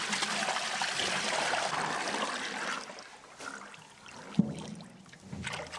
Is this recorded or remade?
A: recorded